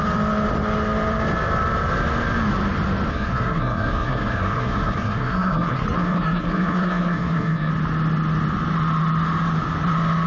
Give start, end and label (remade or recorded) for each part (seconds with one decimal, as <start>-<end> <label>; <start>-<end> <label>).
0.0-3.1 recorded; 3.1-7.7 remade; 7.7-10.3 recorded